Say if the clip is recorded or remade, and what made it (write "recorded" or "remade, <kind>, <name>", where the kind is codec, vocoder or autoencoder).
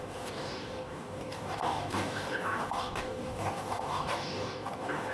remade, codec, DAC